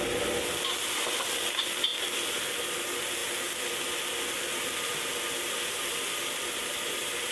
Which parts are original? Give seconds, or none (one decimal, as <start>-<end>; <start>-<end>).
0.0-7.3